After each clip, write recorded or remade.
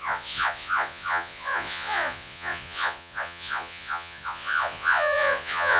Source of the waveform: remade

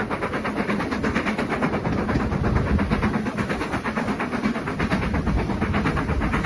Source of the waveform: recorded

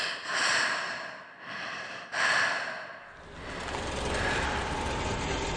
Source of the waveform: recorded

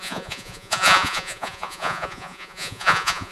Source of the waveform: remade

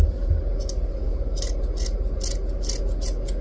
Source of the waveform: recorded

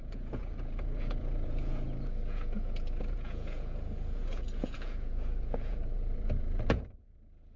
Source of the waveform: remade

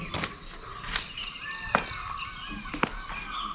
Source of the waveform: recorded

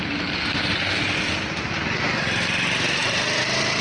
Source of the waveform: recorded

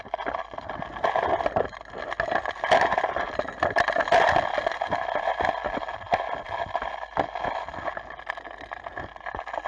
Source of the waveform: recorded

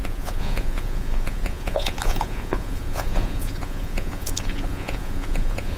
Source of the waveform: remade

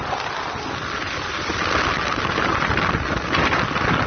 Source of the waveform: recorded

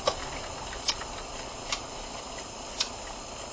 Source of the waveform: recorded